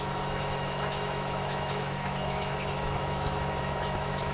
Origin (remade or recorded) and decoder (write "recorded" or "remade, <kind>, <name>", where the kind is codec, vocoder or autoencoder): remade, autoencoder, DAC-VAE